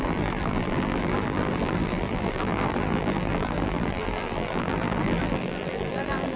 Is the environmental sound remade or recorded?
remade